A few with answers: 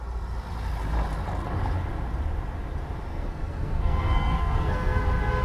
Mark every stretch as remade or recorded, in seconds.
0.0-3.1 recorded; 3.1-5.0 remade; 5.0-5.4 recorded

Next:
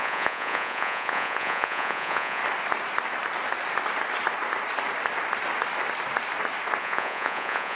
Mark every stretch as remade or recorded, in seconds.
0.0-2.4 remade; 2.4-6.8 recorded; 6.8-7.8 remade